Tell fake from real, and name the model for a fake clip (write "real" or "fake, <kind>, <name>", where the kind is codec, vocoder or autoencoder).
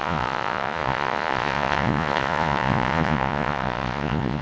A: fake, vocoder, Vocos